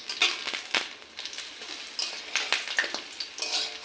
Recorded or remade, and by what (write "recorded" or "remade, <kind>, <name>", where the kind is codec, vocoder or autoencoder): recorded